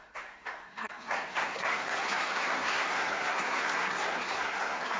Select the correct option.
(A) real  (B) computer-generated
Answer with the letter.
B